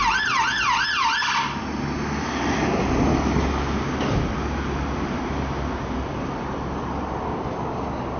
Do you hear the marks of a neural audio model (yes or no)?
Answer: no